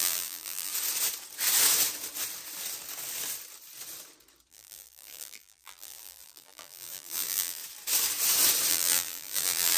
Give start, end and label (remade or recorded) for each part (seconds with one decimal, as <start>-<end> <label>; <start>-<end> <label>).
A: 0.0-0.7 remade; 0.7-4.5 recorded; 4.5-7.6 remade; 7.6-8.7 recorded; 8.7-9.8 remade